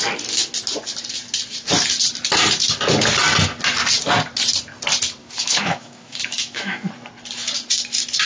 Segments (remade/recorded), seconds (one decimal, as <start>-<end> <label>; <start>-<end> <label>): 0.0-5.2 recorded; 5.2-6.8 remade; 6.8-8.3 recorded